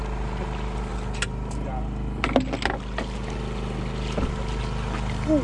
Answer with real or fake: real